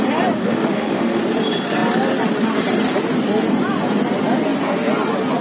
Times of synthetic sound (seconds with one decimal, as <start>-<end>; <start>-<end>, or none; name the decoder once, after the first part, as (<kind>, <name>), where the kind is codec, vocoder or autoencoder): 0.4-1.2 (autoencoder, DAC-VAE)

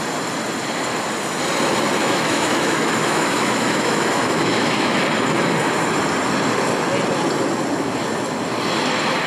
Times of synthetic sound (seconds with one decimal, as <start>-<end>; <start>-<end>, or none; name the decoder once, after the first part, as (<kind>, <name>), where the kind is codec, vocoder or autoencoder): 2.0-5.0 (autoencoder, DAC-VAE)

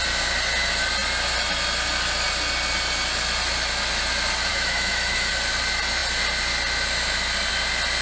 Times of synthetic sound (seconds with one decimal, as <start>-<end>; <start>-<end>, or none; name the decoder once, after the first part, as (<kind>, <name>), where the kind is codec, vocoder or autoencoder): 4.5-5.3 (autoencoder, DAC-VAE)

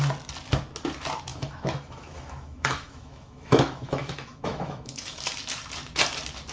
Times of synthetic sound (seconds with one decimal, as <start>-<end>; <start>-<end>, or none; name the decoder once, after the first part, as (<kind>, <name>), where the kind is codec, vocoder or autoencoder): 1.3-5.2 (autoencoder, DAC-VAE)

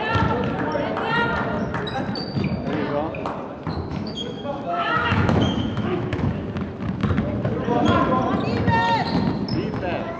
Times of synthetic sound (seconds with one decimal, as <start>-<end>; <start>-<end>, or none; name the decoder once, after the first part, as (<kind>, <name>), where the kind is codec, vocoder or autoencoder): 3.9-6.3 (autoencoder, DAC-VAE)